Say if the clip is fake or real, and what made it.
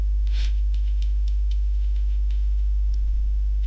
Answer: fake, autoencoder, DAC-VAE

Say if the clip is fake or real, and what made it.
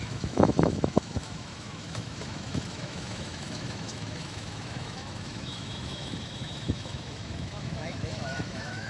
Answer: fake, autoencoder, DAC-VAE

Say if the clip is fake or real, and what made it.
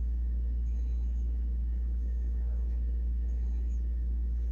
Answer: fake, autoencoder, DAC-VAE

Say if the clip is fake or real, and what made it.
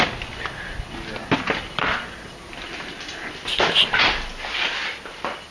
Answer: real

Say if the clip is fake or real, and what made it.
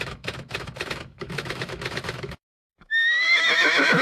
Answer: fake, autoencoder, DAC-VAE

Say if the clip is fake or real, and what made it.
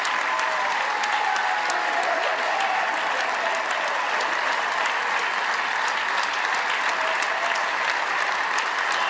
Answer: real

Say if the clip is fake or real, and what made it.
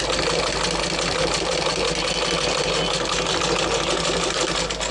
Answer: real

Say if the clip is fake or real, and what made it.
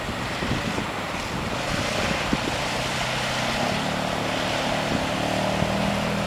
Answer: real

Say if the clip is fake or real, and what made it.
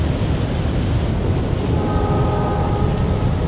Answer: real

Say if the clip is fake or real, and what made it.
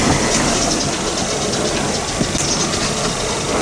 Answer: real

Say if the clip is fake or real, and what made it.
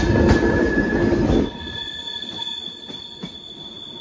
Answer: real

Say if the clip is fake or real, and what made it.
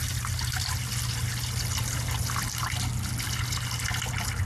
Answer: real